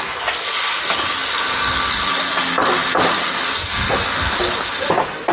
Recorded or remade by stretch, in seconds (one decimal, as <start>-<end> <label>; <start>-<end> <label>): 0.0-5.3 recorded